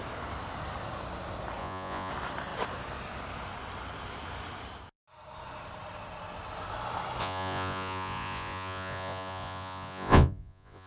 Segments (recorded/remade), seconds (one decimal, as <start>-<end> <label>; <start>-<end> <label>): 0.0-1.6 recorded; 1.6-2.1 remade; 2.1-7.2 recorded; 7.2-10.9 remade